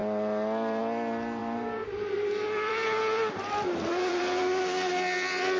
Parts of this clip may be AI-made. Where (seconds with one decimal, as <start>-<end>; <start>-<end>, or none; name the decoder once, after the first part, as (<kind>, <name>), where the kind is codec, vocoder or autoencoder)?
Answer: 0.0-0.8 (vocoder, BigVGAN v2); 1.4-4.2